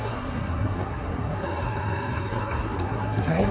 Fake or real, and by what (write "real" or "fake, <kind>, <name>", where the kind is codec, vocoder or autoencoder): fake, codec, SNAC